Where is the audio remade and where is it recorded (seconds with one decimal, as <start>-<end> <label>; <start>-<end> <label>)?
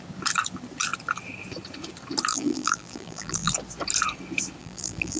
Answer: 0.0-2.3 recorded; 2.3-3.5 remade; 3.5-4.6 recorded; 4.6-5.2 remade